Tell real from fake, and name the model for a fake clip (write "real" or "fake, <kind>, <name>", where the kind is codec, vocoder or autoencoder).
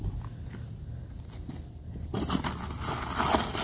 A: real